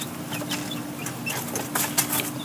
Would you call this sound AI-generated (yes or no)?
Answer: no